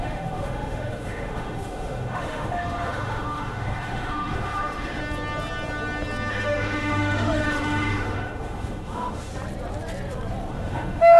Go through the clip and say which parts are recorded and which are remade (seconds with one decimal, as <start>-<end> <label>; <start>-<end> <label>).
0.0-5.0 remade; 5.0-6.3 recorded; 6.3-9.3 remade; 9.3-10.5 recorded; 10.5-11.2 remade